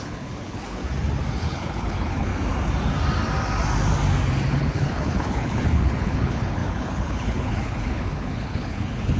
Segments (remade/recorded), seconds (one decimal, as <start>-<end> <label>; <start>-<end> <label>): 0.0-0.8 remade; 0.8-1.4 recorded; 1.4-2.3 remade; 2.3-4.5 recorded; 4.5-9.2 remade